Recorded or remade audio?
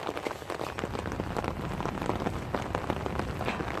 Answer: recorded